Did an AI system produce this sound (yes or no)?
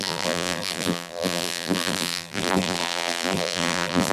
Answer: yes